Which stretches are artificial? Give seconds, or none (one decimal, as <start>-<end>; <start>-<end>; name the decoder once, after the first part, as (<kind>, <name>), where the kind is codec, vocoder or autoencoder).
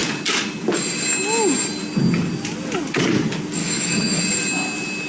3.6-4.2 (autoencoder, DAC-VAE)